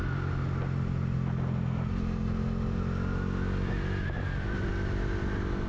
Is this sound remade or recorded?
recorded